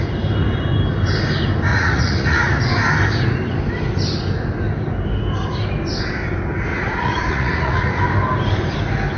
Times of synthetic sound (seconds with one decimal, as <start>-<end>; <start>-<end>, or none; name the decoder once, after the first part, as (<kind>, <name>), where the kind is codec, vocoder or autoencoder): 1.7-2.6 (vocoder, Vocos); 6.7-8.0